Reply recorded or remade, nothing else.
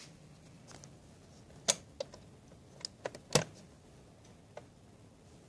recorded